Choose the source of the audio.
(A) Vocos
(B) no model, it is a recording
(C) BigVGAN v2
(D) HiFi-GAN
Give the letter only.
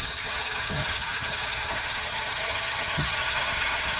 D